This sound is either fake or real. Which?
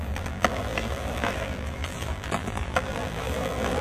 fake